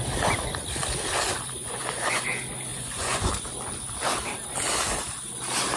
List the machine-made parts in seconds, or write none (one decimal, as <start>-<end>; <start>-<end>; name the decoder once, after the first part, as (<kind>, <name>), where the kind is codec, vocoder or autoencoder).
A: 1.6-2.3 (vocoder, Vocos); 2.7-3.3